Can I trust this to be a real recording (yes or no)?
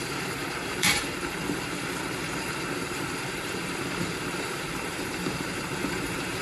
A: no